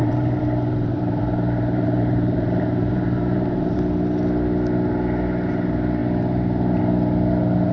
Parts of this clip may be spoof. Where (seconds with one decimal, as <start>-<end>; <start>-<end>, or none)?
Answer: 0.0-3.8